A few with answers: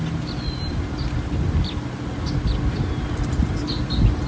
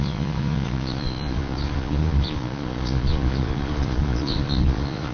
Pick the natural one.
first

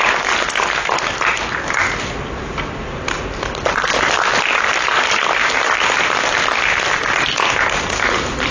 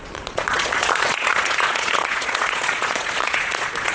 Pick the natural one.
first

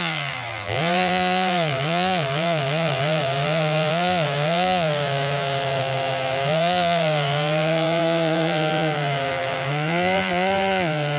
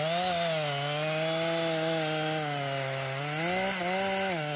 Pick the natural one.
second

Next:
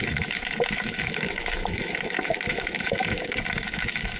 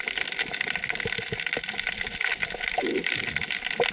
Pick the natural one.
second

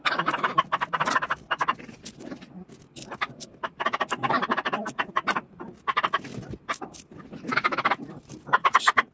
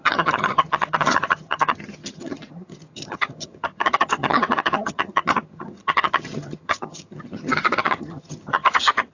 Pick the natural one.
first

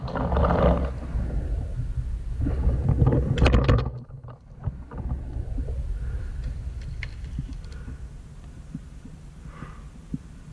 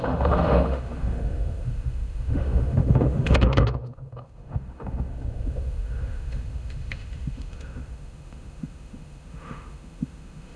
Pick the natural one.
first